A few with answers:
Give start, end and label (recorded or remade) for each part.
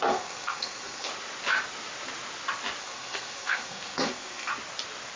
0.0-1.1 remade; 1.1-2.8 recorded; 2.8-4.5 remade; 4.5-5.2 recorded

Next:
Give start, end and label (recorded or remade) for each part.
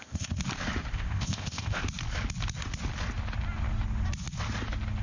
0.0-0.4 remade; 0.4-0.9 recorded; 0.9-1.8 remade; 1.8-5.0 recorded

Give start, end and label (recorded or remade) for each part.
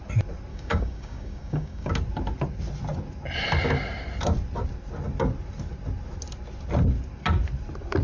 0.0-0.5 recorded; 0.5-1.9 remade; 1.9-8.0 recorded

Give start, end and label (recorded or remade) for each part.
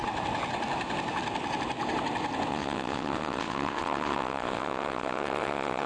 0.0-2.5 recorded; 2.5-5.9 remade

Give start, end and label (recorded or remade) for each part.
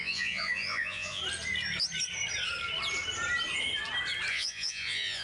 0.0-1.2 remade; 1.2-4.3 recorded; 4.3-5.2 remade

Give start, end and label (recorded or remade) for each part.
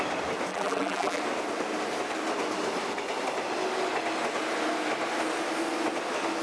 0.0-0.5 recorded; 0.5-1.2 remade; 1.2-6.4 recorded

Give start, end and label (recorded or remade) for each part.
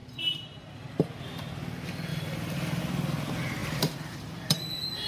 0.0-0.9 remade; 0.9-2.1 recorded; 2.1-2.8 remade; 2.8-3.6 recorded; 3.6-5.1 remade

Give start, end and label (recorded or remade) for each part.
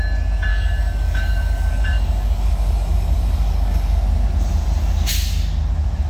0.0-0.5 recorded; 0.5-4.0 remade; 4.0-6.1 recorded